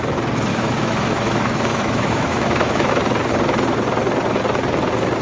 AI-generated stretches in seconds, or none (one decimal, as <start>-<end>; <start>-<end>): 0.5-2.9